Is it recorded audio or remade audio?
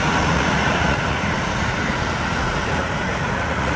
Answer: remade